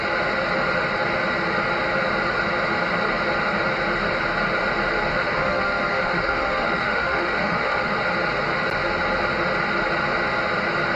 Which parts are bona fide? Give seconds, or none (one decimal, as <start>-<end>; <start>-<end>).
0.0-5.1; 7.9-11.0